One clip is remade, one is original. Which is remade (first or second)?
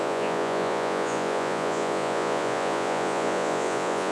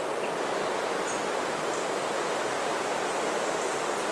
first